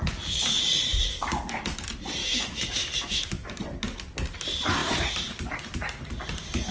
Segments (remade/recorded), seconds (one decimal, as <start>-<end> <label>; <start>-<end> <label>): 0.0-2.2 recorded; 2.2-3.6 remade; 3.6-6.7 recorded